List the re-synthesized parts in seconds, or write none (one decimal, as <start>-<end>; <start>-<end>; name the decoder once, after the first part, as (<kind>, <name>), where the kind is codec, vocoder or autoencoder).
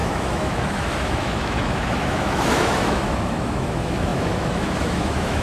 0.0-5.4 (autoencoder, DAC-VAE)